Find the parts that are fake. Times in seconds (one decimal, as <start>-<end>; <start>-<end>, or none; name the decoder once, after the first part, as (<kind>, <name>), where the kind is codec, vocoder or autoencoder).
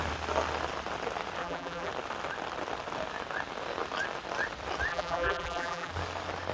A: 1.4-1.9 (vocoder, BigVGAN v2); 4.9-5.9